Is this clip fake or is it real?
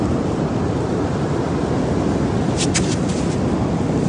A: real